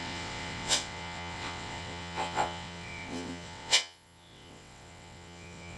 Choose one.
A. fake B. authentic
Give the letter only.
A